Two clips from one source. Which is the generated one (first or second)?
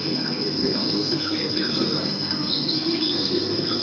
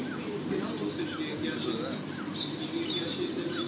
first